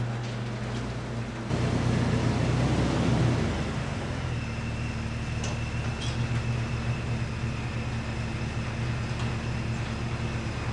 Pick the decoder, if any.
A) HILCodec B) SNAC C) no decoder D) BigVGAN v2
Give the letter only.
C